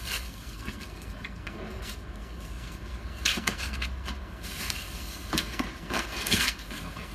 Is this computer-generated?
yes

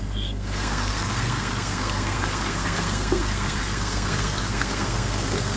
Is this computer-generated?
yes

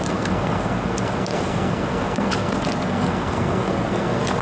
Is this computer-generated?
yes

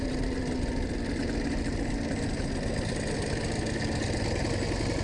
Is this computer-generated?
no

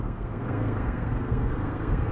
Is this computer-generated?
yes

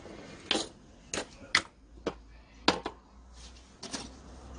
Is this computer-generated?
no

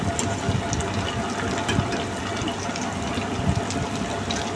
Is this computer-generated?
no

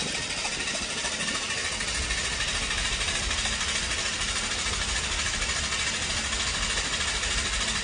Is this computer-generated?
no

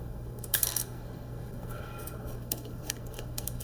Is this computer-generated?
yes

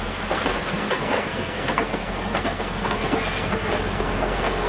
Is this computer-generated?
yes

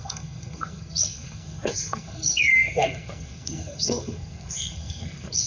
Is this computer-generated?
yes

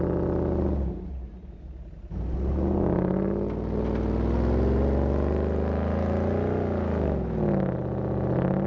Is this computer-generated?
no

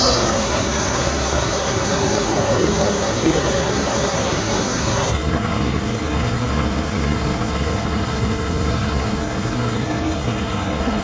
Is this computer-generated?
yes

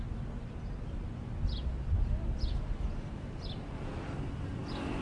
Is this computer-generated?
no